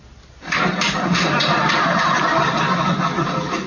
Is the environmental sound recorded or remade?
recorded